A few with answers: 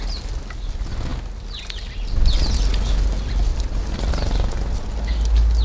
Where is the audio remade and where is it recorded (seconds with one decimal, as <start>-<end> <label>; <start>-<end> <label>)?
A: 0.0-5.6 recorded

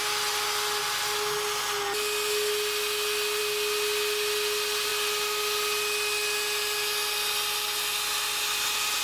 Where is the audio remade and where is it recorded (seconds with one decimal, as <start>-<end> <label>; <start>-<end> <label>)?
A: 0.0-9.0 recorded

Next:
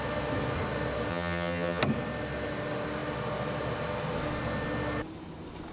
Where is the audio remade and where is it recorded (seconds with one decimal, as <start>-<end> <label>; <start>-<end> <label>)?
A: 0.0-1.1 recorded; 1.1-1.8 remade; 1.8-5.7 recorded

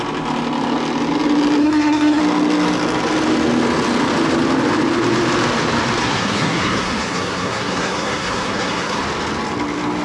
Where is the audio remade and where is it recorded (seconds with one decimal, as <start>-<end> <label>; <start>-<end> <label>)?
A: 0.0-1.6 recorded; 1.6-2.2 remade; 2.2-6.0 recorded; 6.0-9.0 remade; 9.0-10.0 recorded

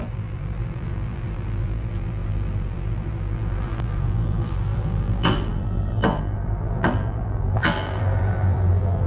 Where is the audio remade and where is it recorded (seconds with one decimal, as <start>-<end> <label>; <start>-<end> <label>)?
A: 0.0-9.1 remade

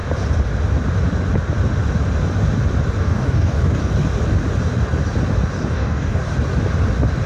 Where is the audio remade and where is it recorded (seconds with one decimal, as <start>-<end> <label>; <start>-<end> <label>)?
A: 0.0-3.0 recorded; 3.0-3.8 remade; 3.8-5.7 recorded; 5.7-6.2 remade; 6.2-7.3 recorded

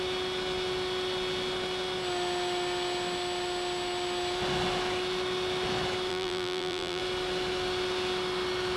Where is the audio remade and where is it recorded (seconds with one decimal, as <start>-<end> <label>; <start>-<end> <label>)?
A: 0.0-6.1 recorded; 6.1-7.0 remade; 7.0-8.8 recorded

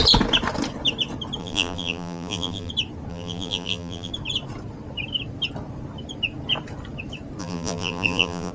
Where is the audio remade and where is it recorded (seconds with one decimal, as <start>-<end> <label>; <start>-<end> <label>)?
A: 0.0-1.4 recorded; 1.4-2.7 remade; 2.7-3.1 recorded; 3.1-4.1 remade; 4.1-7.4 recorded; 7.4-8.5 remade